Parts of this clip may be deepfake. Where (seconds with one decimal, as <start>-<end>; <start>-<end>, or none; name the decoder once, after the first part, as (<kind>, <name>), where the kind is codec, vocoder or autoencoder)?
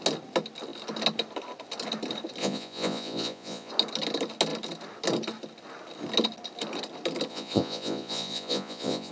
2.4-3.7 (vocoder, Vocos); 7.3-9.1